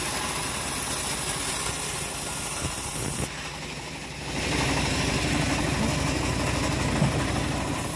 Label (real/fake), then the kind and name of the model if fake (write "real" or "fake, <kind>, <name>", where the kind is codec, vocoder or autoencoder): real